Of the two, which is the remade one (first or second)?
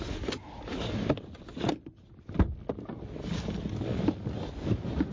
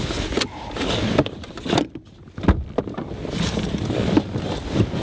second